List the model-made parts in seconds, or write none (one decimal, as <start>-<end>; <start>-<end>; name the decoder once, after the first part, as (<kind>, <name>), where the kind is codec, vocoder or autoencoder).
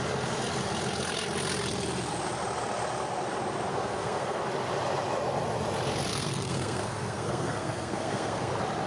3.7-4.4 (codec, SNAC); 6.1-8.5